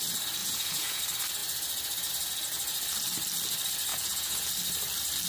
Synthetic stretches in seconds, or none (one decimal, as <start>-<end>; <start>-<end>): 0.4-1.0; 3.9-4.5